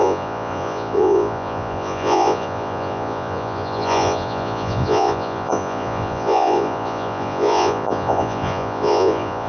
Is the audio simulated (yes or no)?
yes